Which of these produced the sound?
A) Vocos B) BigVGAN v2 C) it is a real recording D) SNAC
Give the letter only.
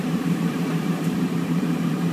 B